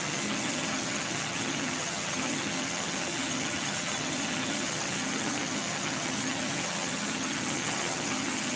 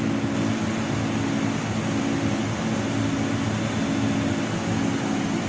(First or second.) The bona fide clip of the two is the second